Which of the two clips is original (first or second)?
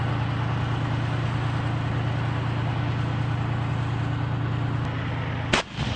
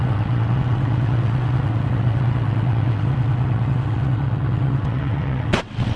first